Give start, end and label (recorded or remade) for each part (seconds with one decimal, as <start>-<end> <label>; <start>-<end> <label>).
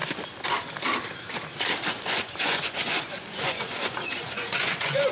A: 0.0-1.9 recorded; 1.9-5.1 remade